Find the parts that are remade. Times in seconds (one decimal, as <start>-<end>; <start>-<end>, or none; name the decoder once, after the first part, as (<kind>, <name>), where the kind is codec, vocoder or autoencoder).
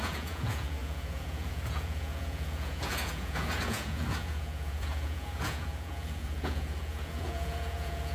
0.0-8.1 (vocoder, Vocos)